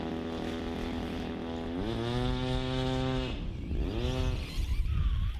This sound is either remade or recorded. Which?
recorded